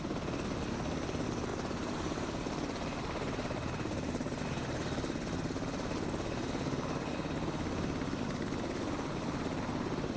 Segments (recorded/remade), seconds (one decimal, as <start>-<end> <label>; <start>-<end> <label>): 0.0-1.5 recorded; 1.5-4.4 remade; 4.4-10.2 recorded